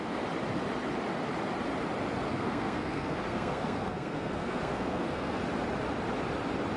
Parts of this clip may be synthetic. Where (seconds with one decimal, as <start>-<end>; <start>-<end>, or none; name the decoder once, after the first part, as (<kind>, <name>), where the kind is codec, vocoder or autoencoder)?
2.3-5.4 (codec, SNAC)